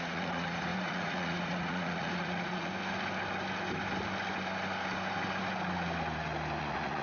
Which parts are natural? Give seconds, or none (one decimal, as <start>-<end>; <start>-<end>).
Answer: 2.7-6.6